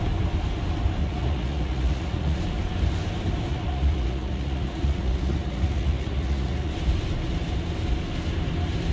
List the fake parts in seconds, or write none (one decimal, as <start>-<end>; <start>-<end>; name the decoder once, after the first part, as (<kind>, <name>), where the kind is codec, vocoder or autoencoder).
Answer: 1.0-2.4 (vocoder, Vocos); 3.5-6.7